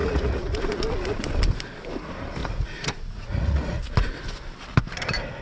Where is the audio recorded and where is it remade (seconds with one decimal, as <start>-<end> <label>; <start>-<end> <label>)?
0.0-0.6 remade; 0.6-2.4 recorded; 2.4-3.8 remade; 3.8-5.4 recorded